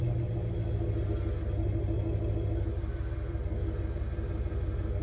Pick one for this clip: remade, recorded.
recorded